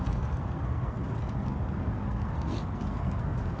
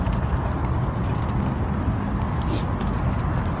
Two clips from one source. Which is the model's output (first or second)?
first